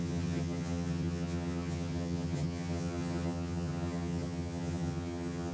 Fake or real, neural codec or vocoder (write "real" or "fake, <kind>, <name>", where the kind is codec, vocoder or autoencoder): fake, vocoder, HiFi-GAN